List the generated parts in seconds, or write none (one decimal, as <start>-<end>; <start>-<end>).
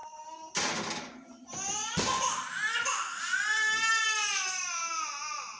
none